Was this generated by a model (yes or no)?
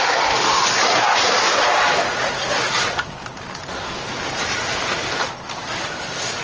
no